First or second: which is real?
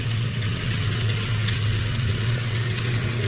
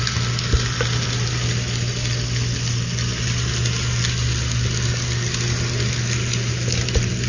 second